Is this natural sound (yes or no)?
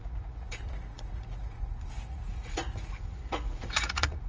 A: no